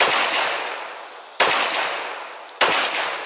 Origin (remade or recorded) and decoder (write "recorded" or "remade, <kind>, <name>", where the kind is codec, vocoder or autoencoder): recorded